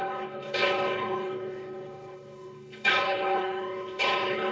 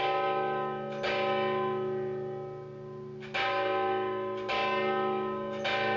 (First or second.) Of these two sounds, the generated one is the first